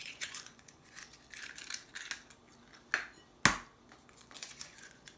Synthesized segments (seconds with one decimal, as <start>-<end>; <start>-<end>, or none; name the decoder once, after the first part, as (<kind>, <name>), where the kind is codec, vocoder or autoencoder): 0.0-1.0 (vocoder, Vocos); 4.1-5.2